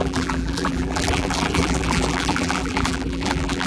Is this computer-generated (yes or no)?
yes